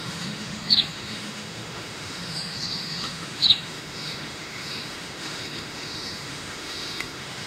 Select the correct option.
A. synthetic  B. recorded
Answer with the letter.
A